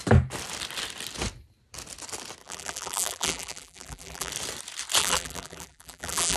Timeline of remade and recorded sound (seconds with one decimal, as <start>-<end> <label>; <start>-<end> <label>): 0.0-2.4 recorded; 2.4-4.3 remade; 4.3-5.0 recorded; 5.0-6.4 remade